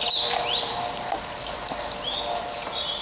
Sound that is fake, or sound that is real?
fake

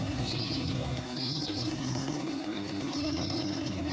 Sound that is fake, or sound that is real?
fake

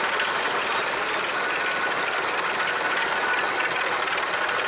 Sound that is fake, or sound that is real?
real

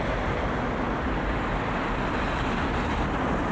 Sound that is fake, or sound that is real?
fake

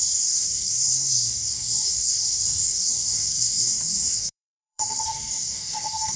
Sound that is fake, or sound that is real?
fake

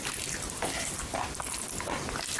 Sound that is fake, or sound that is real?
real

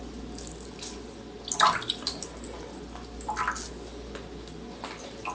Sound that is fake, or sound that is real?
real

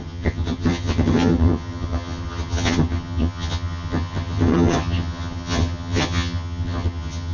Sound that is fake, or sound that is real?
fake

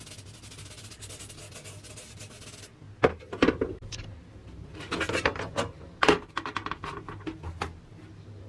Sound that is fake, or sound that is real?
real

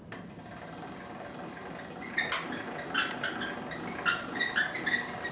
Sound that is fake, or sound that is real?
real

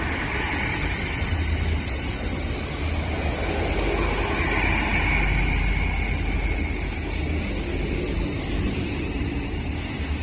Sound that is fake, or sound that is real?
real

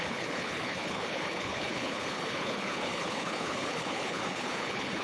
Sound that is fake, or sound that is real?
fake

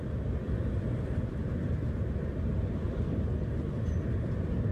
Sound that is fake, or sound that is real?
fake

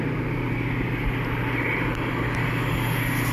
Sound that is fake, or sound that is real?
real